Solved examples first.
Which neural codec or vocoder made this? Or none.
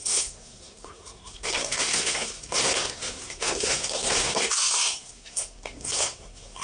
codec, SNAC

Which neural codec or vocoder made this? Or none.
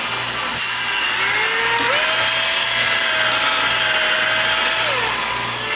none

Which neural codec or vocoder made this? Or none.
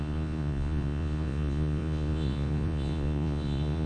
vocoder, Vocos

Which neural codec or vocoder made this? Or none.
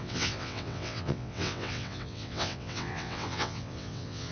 vocoder, WaveNeXt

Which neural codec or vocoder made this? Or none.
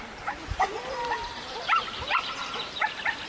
vocoder, BigVGAN v2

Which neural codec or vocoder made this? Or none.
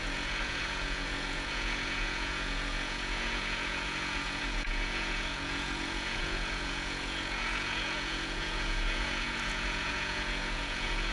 vocoder, Vocos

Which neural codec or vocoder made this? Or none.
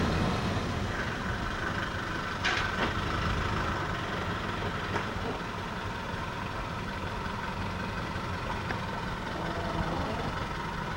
none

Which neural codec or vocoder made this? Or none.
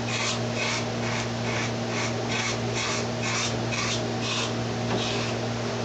none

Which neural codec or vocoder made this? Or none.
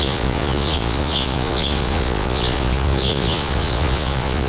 vocoder, Vocos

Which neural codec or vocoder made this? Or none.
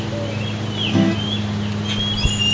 none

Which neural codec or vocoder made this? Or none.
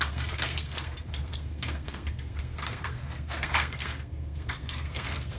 codec, SNAC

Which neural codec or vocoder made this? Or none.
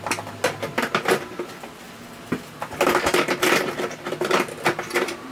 none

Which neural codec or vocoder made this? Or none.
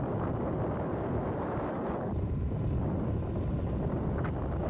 none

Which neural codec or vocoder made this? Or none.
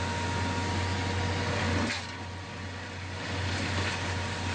none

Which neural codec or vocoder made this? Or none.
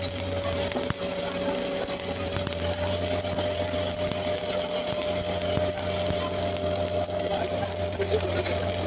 none